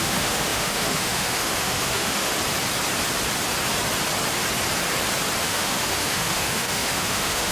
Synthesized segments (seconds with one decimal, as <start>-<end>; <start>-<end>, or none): 0.0-2.3; 5.4-7.5

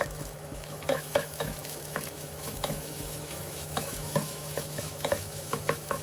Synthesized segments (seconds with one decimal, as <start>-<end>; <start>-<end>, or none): 0.0-6.0

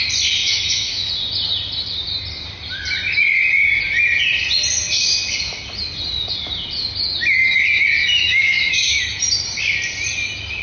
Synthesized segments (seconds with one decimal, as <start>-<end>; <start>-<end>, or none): 0.4-1.1; 8.0-9.2

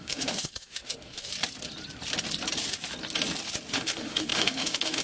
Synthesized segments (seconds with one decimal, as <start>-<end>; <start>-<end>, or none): 0.0-1.3; 3.7-5.0